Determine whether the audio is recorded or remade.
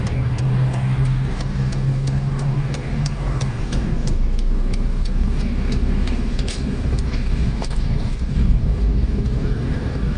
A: remade